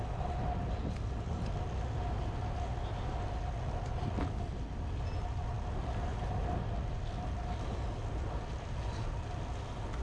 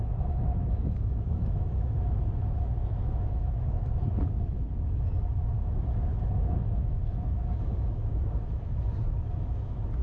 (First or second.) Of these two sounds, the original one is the first